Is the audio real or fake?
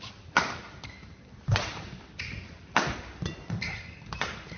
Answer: real